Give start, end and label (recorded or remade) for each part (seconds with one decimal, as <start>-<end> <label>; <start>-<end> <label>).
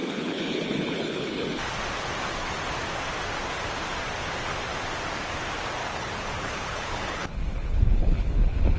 0.0-1.5 remade; 1.5-5.8 recorded; 5.8-8.8 remade